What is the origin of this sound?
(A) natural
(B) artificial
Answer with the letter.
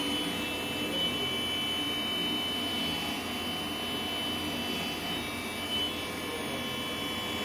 A